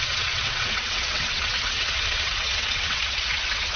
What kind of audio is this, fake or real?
fake